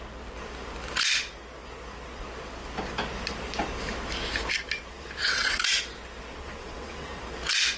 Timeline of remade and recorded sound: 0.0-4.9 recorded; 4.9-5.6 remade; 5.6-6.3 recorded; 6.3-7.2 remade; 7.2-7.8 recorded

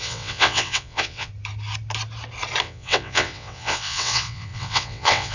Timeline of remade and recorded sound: 0.0-1.3 remade; 1.3-2.6 recorded; 2.6-5.3 remade

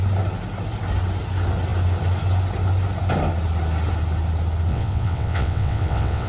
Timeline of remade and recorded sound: 0.0-4.7 recorded; 4.7-6.3 remade

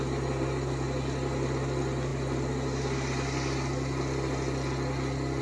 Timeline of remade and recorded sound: 0.0-5.4 recorded

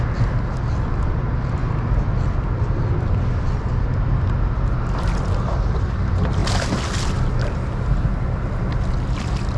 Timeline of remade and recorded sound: 0.0-9.6 recorded

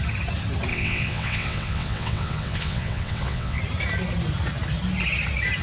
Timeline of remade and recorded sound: 0.0-0.7 recorded; 0.7-3.6 remade; 3.6-5.6 recorded